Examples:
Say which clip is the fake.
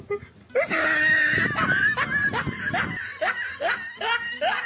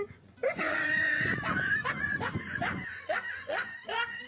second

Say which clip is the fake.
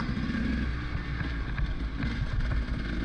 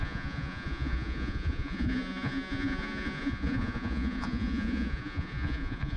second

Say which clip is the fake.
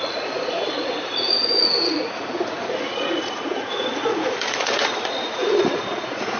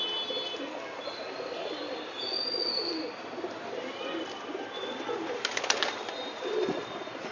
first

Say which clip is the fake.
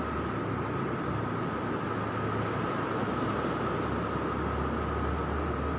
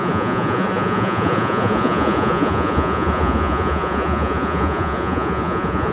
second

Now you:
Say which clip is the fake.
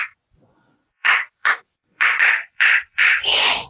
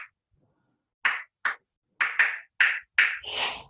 first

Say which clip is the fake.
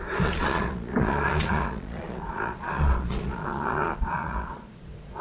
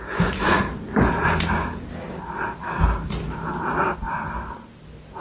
first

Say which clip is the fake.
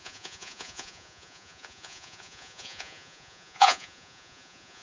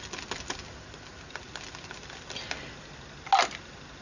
first